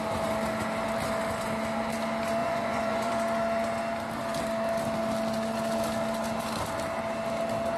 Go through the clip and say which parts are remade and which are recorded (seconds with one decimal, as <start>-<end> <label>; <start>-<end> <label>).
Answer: 0.0-2.4 recorded; 2.4-3.1 remade; 3.1-7.8 recorded